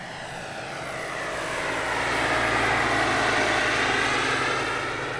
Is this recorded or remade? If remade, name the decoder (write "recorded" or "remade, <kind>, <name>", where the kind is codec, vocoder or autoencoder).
recorded